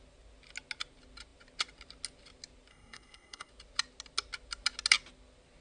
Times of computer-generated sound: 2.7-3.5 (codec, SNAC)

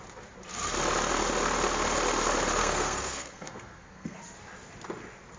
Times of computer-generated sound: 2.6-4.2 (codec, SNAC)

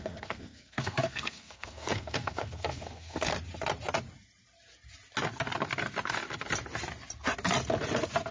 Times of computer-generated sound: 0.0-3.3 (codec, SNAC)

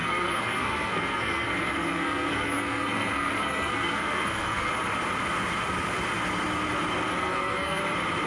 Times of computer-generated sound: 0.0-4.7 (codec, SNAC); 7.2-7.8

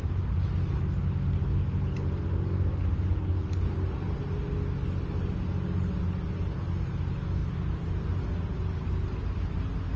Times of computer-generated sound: none

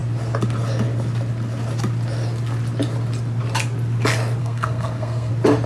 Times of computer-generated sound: 4.4-5.3 (codec, SNAC)

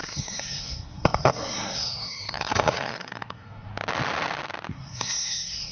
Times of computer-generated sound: 0.0-3.7 (codec, SNAC); 4.7-5.7

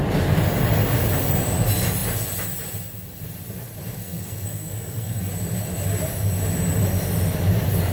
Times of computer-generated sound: 4.0-5.3 (codec, SNAC)